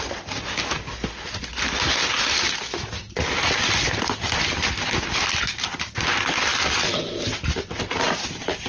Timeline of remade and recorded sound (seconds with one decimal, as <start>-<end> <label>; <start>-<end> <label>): 0.0-8.7 recorded